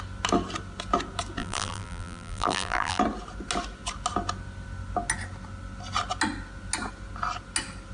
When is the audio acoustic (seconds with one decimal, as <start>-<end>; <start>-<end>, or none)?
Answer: 0.0-1.4; 3.0-7.9